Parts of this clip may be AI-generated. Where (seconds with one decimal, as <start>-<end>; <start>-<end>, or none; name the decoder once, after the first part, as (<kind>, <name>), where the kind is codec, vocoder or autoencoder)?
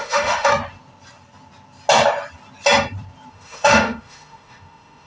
0.0-0.5 (autoencoder, DAC-VAE); 3.3-5.1